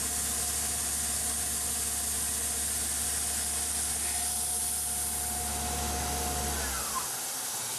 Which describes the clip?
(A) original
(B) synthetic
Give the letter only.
A